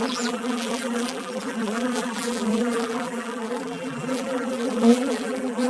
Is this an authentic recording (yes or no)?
no